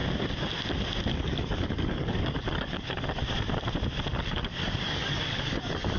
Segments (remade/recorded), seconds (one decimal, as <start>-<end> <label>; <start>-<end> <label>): 0.0-1.1 recorded; 1.1-3.2 remade; 3.2-4.1 recorded; 4.1-6.0 remade